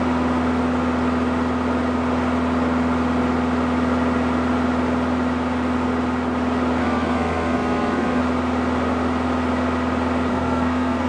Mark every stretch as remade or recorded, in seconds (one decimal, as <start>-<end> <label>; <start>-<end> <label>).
0.0-6.8 recorded; 6.8-8.2 remade; 8.2-10.3 recorded; 10.3-11.1 remade